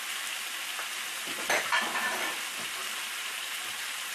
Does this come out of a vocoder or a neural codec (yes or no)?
yes